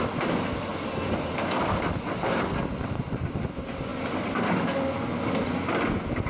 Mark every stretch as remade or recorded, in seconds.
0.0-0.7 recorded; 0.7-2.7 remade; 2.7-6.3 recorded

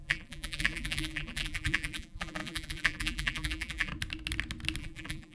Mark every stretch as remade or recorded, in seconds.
0.0-3.9 remade; 3.9-4.8 recorded; 4.8-5.3 remade

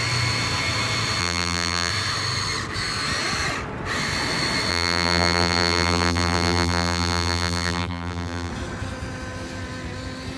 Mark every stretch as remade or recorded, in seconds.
0.0-1.2 recorded; 1.2-1.9 remade; 1.9-4.7 recorded; 4.7-8.5 remade; 8.5-10.4 recorded

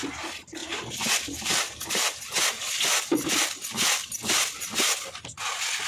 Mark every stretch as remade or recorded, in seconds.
0.0-0.6 recorded; 0.6-2.2 remade; 2.2-5.9 recorded

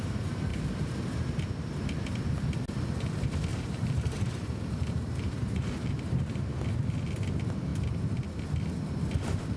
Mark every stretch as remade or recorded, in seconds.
0.0-3.5 recorded; 3.5-6.4 remade; 6.4-9.6 recorded

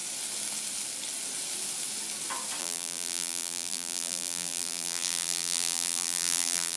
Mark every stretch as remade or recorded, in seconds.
0.0-2.6 recorded; 2.6-6.8 remade